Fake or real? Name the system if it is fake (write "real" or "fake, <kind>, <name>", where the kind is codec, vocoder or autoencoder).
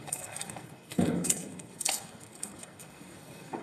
fake, codec, SNAC